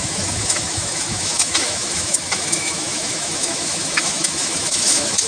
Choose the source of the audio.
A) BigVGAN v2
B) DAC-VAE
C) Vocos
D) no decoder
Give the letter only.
B